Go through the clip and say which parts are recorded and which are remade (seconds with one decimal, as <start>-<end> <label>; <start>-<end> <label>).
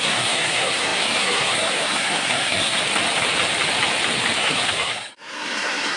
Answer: 0.0-2.8 remade; 2.8-4.4 recorded; 4.4-6.0 remade